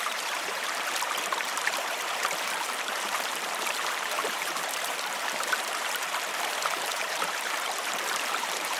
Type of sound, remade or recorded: remade